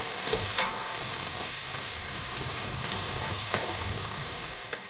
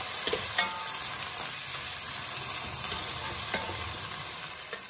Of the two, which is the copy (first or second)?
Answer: first